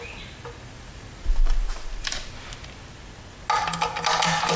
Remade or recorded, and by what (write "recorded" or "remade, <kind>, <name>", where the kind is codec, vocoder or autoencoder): recorded